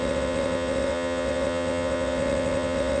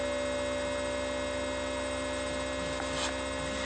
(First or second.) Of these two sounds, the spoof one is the first